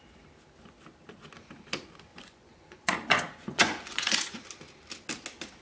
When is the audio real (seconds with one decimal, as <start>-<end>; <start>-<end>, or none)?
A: 0.0-2.1; 4.4-5.6